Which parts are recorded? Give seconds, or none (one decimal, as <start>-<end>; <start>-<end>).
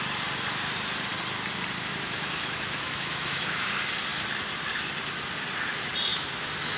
0.0-1.9; 3.6-6.1